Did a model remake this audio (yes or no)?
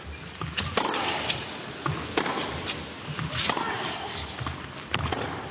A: no